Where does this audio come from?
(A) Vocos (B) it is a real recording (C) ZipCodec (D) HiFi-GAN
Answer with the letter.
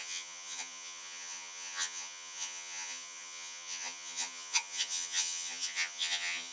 D